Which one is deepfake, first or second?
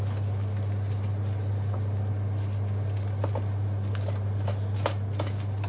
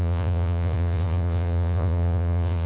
second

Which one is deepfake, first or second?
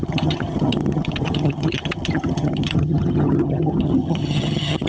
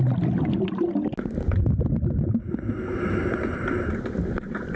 first